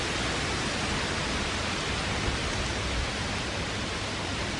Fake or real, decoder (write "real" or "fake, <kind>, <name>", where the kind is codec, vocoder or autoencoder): real